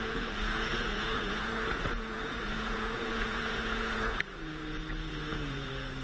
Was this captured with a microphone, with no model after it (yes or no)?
no